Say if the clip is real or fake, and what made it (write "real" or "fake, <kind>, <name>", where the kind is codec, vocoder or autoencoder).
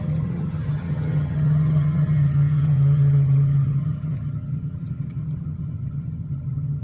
fake, vocoder, HiFi-GAN